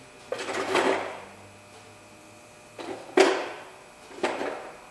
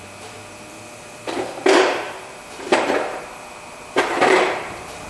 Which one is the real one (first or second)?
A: first